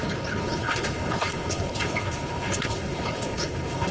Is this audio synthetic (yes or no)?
yes